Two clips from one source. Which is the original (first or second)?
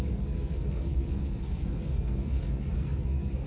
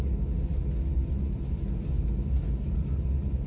second